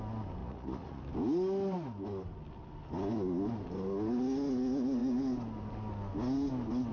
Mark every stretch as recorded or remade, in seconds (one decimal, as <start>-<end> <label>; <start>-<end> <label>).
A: 0.0-0.4 recorded; 0.4-1.0 remade; 1.0-6.9 recorded